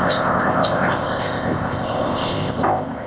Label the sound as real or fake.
fake